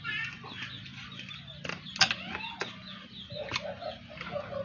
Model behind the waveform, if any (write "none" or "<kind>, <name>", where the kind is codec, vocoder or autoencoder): none